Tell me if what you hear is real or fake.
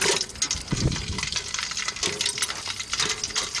real